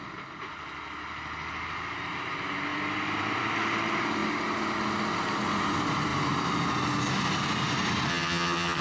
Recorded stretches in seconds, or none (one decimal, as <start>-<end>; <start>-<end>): 0.0-8.1